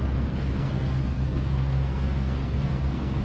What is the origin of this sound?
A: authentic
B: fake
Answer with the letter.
B